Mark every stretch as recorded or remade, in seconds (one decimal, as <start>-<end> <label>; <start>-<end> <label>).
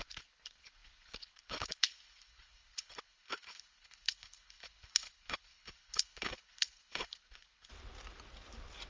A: 0.0-7.7 remade; 7.7-8.9 recorded